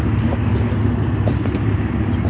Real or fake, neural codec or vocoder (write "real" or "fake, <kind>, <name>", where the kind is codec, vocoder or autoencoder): real